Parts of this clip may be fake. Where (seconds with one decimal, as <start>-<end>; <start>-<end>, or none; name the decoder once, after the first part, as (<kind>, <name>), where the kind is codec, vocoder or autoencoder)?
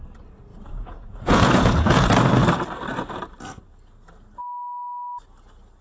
0.5-2.1 (vocoder, Vocos)